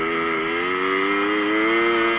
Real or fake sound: real